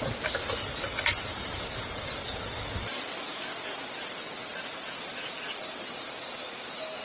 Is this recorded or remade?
recorded